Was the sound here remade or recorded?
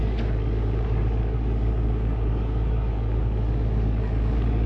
remade